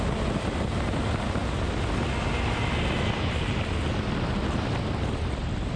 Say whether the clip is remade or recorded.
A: recorded